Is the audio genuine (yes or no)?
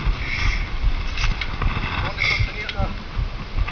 yes